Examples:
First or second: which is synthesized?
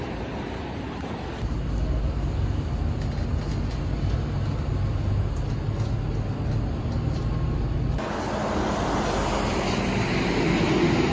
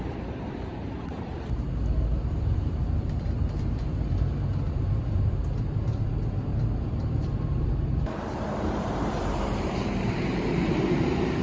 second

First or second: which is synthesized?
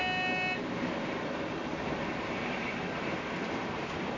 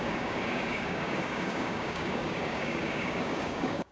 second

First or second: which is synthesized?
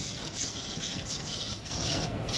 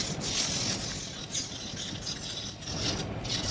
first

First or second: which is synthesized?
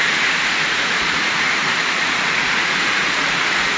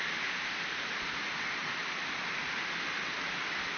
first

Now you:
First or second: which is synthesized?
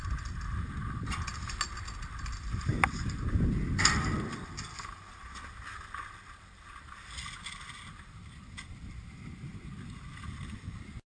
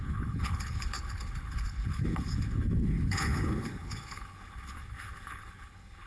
second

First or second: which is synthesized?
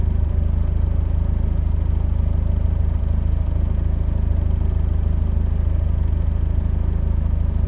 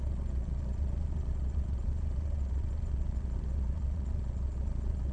second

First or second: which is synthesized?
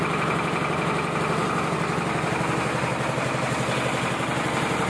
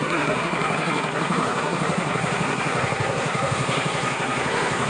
second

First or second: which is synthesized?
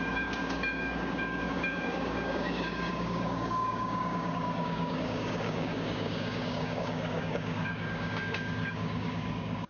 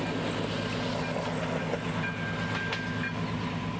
first